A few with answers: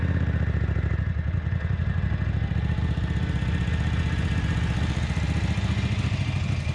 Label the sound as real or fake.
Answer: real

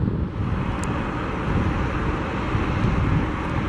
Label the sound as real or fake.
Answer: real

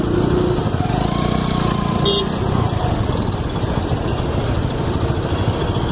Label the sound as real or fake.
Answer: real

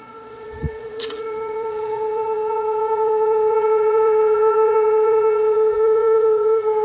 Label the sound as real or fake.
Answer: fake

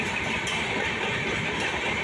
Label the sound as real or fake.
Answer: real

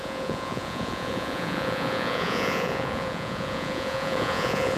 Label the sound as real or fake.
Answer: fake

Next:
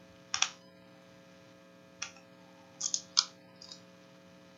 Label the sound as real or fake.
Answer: real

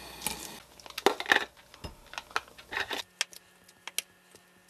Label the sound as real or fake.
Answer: real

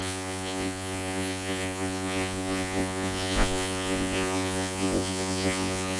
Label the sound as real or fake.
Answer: fake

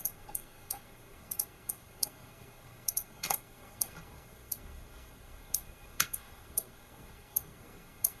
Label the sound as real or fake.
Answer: fake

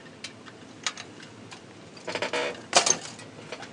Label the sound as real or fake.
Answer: real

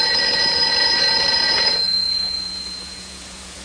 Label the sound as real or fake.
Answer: fake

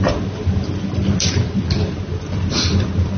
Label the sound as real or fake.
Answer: real